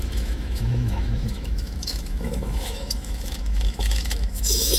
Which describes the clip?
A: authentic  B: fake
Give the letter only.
B